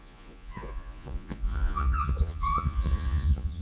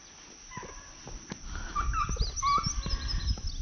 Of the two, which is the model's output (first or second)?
first